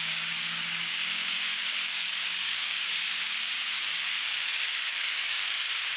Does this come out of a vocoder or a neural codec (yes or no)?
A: yes